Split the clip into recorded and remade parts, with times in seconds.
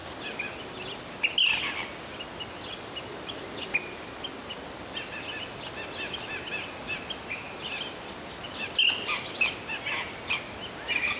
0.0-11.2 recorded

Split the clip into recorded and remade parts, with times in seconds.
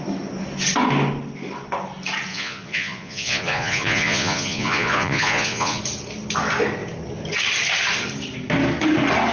0.0-2.3 recorded; 2.3-5.8 remade; 5.8-9.3 recorded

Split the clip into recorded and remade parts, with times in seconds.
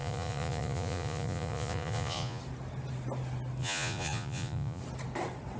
0.0-2.4 remade; 2.4-3.6 recorded; 3.6-4.8 remade; 4.8-5.6 recorded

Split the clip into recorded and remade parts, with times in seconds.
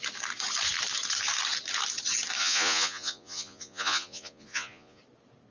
0.0-2.4 recorded; 2.4-5.0 remade; 5.0-5.5 recorded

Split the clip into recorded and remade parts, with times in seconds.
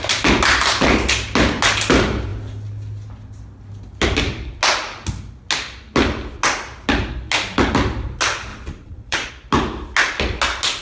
0.0-8.5 recorded; 8.5-9.3 remade; 9.3-10.8 recorded